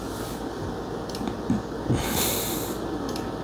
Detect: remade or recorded recorded